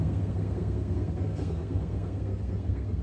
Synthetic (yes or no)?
yes